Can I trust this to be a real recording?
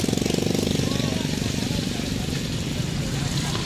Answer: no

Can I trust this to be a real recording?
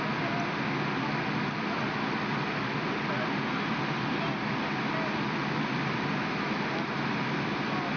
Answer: yes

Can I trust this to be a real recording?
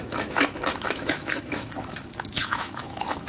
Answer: no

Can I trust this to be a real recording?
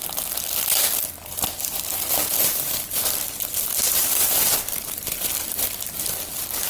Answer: yes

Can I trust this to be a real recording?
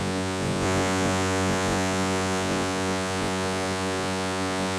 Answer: no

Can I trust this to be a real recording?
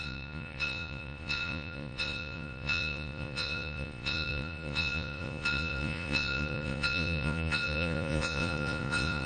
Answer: no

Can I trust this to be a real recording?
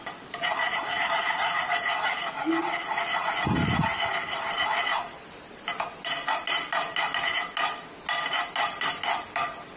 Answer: yes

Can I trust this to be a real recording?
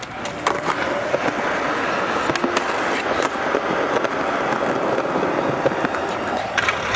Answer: yes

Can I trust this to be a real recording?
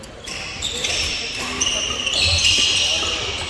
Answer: yes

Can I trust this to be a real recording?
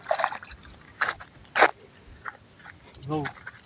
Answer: yes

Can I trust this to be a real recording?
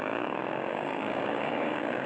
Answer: no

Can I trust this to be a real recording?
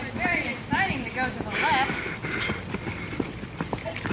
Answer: yes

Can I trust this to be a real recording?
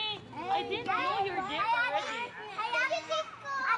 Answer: yes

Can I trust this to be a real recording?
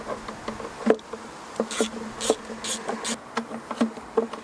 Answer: yes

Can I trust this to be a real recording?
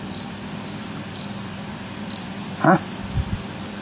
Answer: no